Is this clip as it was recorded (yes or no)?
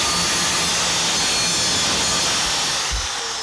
yes